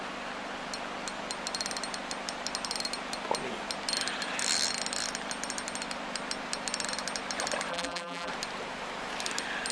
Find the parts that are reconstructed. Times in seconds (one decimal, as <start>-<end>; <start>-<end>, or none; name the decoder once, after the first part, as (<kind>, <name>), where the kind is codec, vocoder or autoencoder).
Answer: 7.7-8.3 (vocoder, BigVGAN v2)